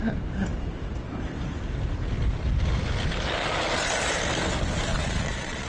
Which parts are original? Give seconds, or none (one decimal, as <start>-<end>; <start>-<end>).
0.0-4.9